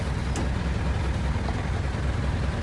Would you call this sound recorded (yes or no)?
yes